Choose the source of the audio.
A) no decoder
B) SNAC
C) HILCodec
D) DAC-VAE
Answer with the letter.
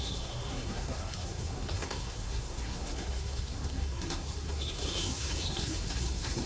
B